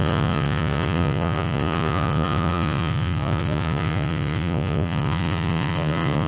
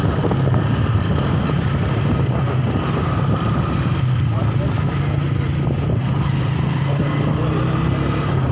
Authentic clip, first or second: second